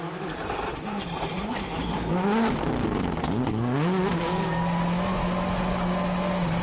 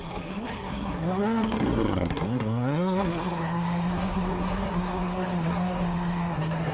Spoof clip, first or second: second